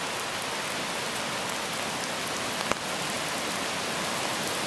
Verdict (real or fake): real